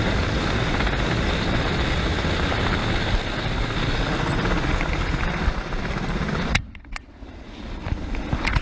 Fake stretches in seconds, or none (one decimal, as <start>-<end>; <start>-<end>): none